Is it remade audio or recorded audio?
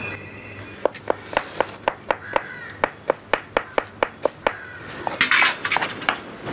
recorded